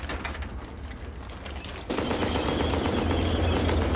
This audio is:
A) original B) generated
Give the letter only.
A